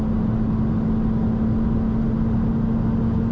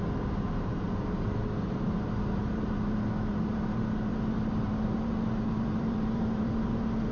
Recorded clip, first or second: first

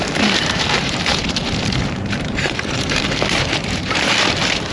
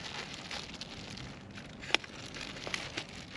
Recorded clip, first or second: second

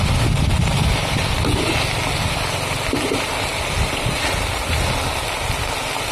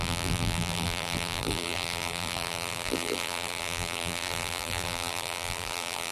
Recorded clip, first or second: first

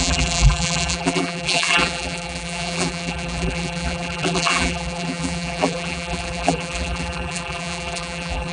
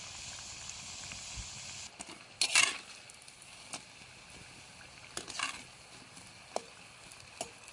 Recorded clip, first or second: second